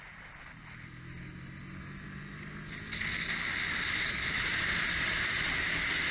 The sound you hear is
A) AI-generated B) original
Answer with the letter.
B